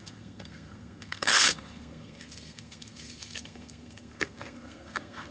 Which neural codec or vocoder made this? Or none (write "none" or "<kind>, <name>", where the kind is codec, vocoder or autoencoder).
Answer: codec, SNAC